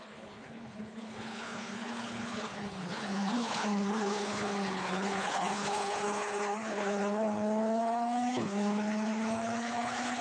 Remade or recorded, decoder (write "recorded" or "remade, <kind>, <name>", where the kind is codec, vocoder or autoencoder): remade, codec, HILCodec